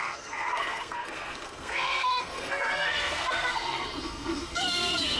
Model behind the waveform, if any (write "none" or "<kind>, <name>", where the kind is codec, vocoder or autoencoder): codec, SNAC